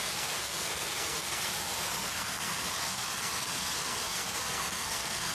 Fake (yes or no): yes